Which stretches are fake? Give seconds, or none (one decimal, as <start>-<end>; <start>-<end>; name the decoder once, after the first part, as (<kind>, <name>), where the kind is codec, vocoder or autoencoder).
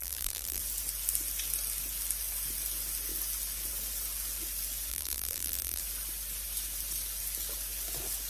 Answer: 0.0-0.6 (vocoder, BigVGAN v2); 4.9-5.8